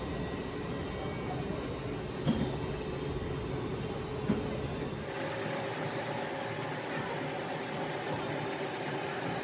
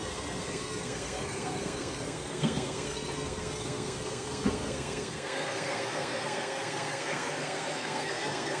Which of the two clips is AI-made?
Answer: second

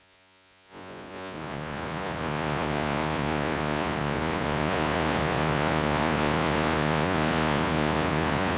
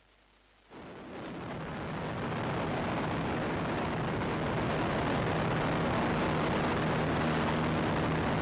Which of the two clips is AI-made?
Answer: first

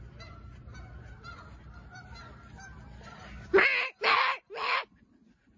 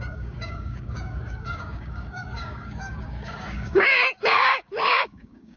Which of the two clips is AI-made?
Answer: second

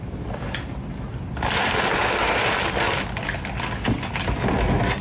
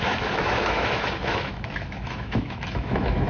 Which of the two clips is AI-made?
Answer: second